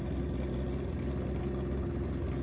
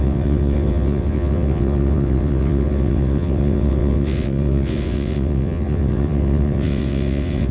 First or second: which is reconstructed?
second